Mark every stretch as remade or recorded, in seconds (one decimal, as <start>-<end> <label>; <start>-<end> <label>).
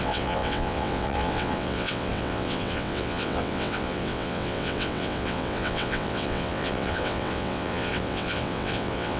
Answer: 0.0-9.2 remade